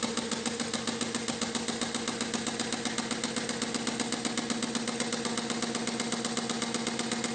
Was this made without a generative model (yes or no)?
yes